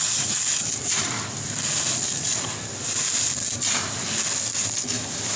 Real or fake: real